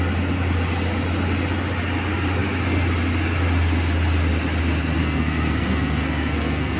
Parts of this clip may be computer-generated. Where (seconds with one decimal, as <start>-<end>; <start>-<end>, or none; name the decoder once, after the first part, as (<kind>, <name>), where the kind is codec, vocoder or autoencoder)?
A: 5.0-6.8 (codec, SNAC)